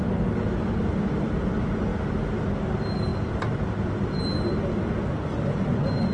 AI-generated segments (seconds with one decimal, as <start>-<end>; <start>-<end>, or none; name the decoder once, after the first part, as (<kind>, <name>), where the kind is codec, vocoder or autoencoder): none